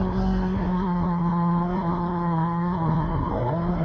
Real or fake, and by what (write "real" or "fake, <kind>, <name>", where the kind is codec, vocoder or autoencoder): fake, codec, SNAC